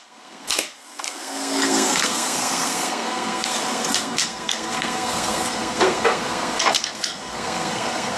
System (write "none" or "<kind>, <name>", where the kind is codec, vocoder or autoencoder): codec, SNAC